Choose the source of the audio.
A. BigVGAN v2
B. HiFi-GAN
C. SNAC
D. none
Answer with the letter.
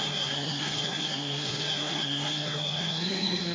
C